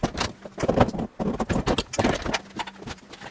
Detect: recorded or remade recorded